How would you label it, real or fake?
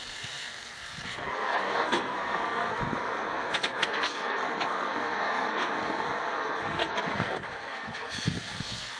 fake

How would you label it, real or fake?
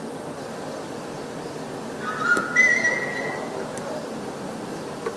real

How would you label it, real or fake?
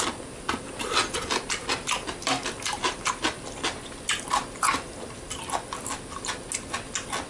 real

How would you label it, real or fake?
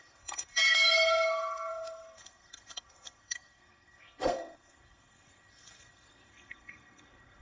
fake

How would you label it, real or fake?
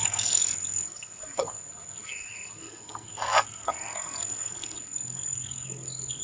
fake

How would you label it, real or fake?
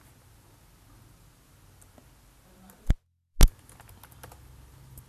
real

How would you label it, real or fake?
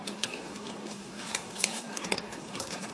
fake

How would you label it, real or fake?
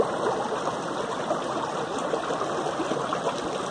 real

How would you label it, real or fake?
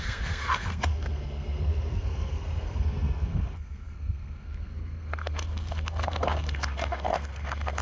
fake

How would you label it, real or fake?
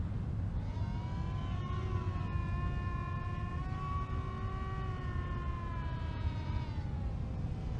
real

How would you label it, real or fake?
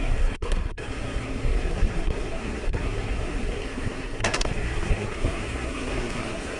fake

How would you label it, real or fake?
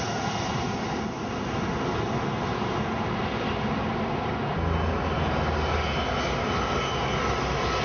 real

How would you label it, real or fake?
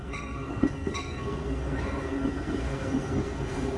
fake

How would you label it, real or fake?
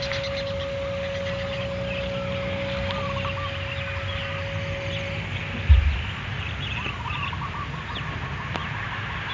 real